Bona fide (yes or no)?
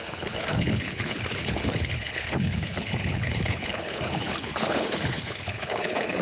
no